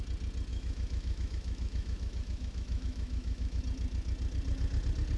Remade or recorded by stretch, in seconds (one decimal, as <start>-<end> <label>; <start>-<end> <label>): 0.0-0.5 recorded; 0.5-3.6 remade; 3.6-5.2 recorded